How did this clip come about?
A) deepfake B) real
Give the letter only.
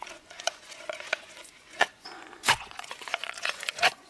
A